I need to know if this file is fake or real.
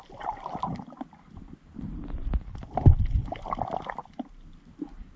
fake